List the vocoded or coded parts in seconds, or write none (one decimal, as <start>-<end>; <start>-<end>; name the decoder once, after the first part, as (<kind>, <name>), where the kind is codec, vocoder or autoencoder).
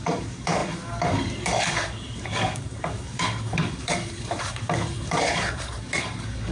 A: 0.0-6.5 (codec, DAC)